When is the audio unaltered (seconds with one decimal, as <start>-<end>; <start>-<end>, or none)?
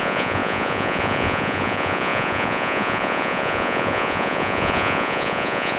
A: none